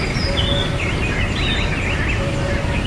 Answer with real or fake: real